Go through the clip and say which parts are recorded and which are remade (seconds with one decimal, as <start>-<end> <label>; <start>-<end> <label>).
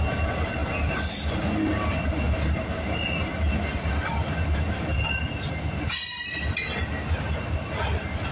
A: 0.0-8.3 recorded